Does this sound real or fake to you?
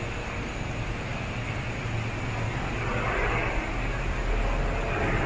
real